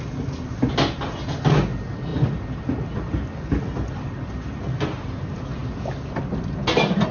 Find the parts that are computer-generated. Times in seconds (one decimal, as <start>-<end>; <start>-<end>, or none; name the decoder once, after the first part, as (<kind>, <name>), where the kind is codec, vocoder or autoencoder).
none